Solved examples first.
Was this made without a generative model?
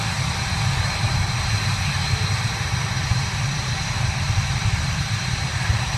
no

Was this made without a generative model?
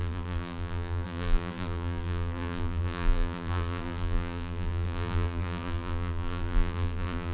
no